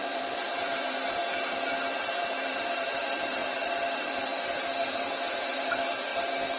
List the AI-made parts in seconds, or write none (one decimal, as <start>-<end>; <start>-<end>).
0.0-1.2; 2.0-4.3; 4.9-6.1